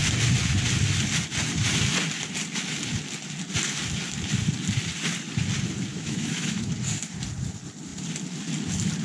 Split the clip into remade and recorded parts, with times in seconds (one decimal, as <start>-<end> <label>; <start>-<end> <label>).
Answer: 0.0-5.9 recorded; 5.9-6.7 remade; 6.7-9.0 recorded